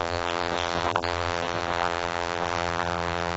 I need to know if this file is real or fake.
fake